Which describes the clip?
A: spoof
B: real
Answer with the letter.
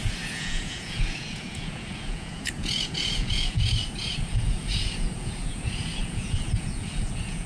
A